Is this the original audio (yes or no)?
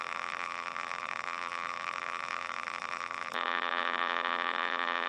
no